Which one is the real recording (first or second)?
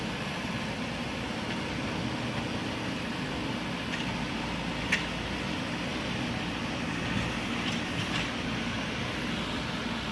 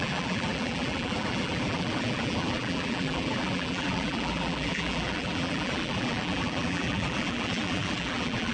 first